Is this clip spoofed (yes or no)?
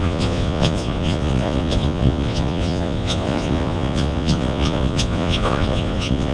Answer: yes